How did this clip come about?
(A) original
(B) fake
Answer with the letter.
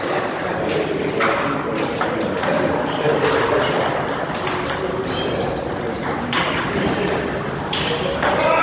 A